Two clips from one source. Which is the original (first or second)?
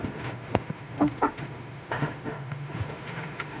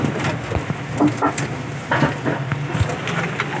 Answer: second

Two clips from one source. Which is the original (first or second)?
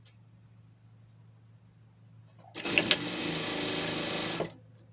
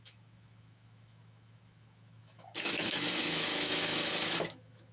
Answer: first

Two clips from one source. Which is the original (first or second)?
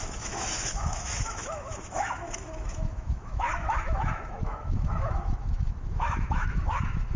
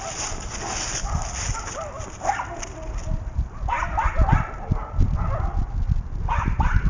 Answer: second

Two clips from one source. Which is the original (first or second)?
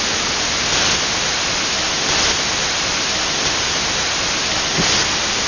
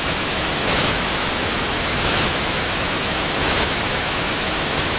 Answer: first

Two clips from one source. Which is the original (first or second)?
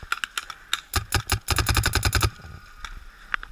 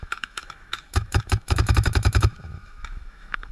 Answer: first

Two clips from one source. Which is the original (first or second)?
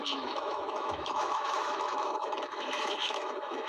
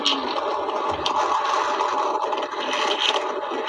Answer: second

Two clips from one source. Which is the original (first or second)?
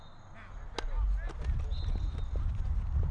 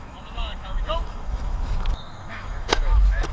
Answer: first